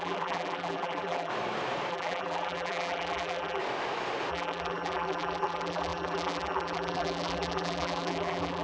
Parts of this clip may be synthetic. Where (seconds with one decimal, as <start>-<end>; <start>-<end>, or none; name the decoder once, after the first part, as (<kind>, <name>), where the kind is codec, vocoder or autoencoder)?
0.0-1.3 (vocoder, BigVGAN v2); 1.9-3.6; 4.3-8.6